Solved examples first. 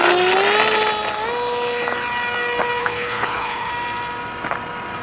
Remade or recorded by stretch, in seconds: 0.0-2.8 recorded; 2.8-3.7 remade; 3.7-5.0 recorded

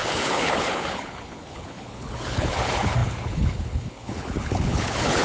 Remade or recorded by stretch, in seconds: 0.0-5.2 remade

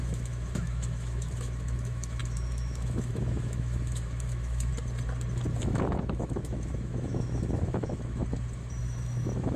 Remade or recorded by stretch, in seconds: 0.0-4.7 remade; 4.7-5.6 recorded; 5.6-8.2 remade; 8.2-8.8 recorded; 8.8-9.6 remade

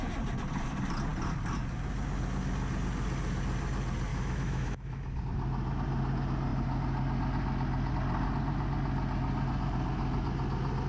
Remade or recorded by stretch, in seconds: 0.0-4.1 recorded; 4.1-5.2 remade; 5.2-10.9 recorded

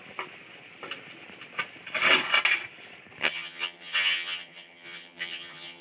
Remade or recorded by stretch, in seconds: 0.0-3.2 recorded; 3.2-5.8 remade

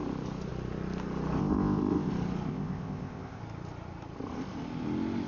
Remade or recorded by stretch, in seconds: 0.0-1.4 recorded; 1.4-2.1 remade; 2.1-2.5 recorded; 2.5-3.4 remade; 3.4-5.3 recorded

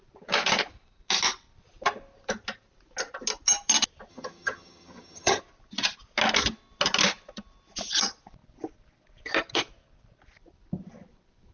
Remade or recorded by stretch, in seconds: 0.0-4.1 recorded; 4.1-5.4 remade; 5.4-11.5 recorded